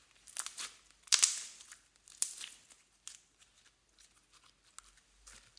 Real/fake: real